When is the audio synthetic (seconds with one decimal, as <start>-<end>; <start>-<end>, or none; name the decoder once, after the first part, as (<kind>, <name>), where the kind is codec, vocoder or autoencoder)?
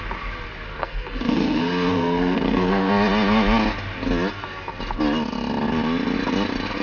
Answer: 0.8-2.9 (codec, SNAC)